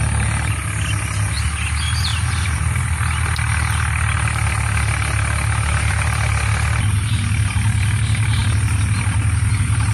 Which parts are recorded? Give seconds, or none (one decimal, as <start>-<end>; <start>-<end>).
0.0-9.9